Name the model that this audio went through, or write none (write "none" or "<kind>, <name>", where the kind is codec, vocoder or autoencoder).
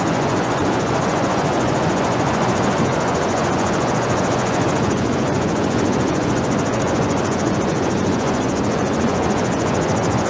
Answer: vocoder, Vocos